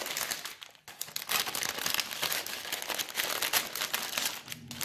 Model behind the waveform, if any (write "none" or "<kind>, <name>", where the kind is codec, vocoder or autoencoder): none